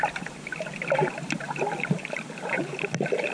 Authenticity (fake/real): real